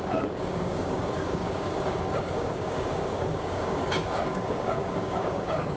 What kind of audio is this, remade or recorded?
remade